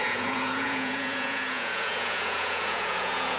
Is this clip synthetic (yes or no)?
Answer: yes